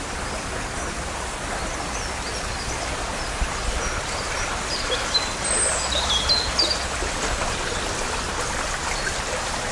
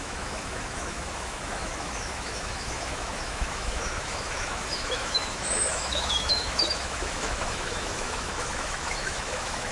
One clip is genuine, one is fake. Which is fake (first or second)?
second